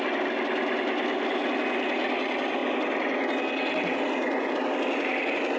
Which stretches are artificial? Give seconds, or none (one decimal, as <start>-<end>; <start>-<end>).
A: none